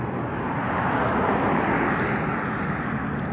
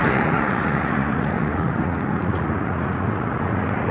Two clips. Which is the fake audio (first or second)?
second